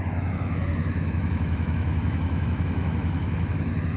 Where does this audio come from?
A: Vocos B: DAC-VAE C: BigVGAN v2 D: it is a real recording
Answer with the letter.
B